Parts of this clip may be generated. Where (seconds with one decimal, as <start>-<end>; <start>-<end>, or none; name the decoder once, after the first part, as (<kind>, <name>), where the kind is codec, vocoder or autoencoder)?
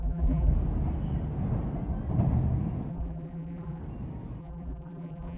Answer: 0.0-0.5 (vocoder, BigVGAN v2); 2.9-3.8; 4.4-5.4